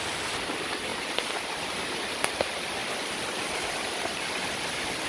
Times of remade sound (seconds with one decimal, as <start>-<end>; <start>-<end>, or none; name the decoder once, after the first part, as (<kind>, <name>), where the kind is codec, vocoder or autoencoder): 0.0-5.1 (vocoder, BigVGAN v2)